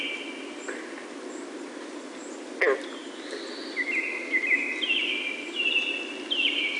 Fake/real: real